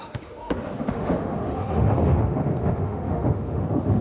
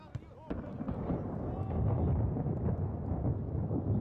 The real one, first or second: second